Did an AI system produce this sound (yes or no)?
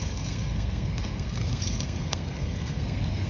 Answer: yes